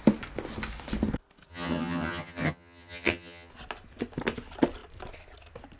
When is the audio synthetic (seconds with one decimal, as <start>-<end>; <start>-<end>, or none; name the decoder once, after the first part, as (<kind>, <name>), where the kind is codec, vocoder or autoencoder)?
1.5-3.5 (vocoder, HiFi-GAN)

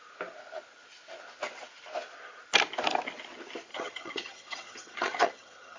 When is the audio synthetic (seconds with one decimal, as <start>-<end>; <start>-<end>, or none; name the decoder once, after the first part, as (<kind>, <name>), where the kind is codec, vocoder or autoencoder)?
3.7-5.8 (vocoder, HiFi-GAN)

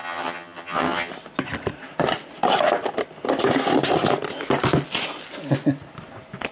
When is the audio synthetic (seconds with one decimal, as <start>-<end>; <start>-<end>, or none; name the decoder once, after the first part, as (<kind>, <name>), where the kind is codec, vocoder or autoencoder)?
0.0-1.1 (vocoder, HiFi-GAN)

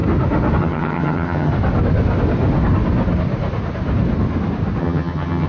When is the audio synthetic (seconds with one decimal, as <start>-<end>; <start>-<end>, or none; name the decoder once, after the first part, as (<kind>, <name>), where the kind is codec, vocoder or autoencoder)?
0.6-1.5 (vocoder, HiFi-GAN); 4.8-5.5

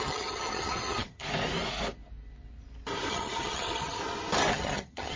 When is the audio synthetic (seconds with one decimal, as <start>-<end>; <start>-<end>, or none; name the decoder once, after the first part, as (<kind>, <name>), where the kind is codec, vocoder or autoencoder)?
0.0-1.2 (vocoder, HiFi-GAN); 3.1-4.0; 4.5-5.2

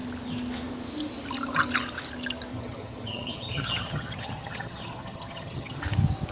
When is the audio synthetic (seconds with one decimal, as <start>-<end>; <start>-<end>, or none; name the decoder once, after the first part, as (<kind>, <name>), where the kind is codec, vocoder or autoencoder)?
2.5-5.8 (vocoder, HiFi-GAN)

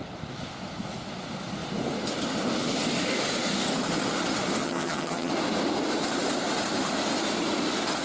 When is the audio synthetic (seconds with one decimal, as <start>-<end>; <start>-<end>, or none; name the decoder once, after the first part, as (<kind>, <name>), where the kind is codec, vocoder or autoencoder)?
4.6-5.3 (vocoder, HiFi-GAN)